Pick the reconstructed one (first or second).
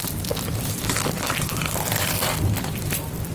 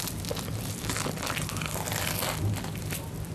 first